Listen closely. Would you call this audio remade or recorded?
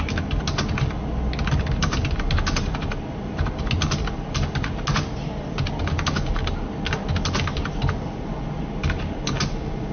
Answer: recorded